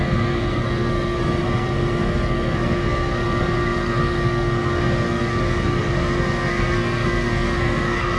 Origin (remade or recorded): remade